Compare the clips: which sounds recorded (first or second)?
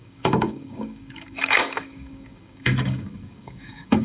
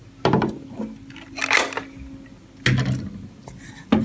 second